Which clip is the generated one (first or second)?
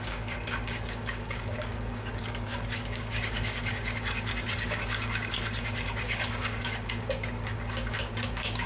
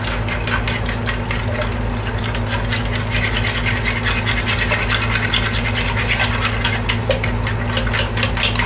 first